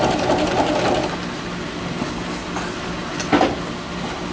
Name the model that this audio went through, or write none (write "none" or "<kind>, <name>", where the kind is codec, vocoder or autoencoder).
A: none